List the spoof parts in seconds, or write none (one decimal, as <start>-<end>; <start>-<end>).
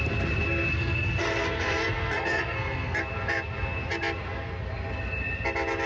0.7-3.0